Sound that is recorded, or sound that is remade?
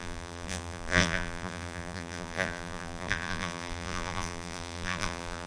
remade